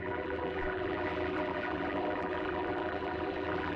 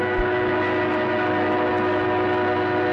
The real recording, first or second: second